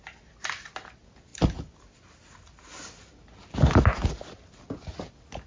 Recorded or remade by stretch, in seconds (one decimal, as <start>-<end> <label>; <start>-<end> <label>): 0.0-5.5 recorded